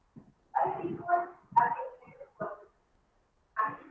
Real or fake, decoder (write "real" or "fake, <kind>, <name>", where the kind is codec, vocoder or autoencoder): real